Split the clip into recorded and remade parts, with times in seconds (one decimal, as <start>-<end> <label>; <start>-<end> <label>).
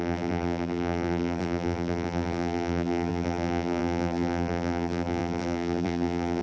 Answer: 0.0-6.4 remade